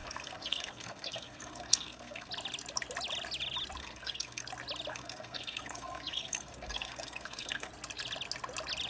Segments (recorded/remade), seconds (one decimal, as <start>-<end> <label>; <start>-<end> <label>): 0.0-2.3 remade; 2.3-3.8 recorded; 3.8-4.4 remade; 4.4-4.9 recorded; 4.9-7.7 remade; 7.7-8.9 recorded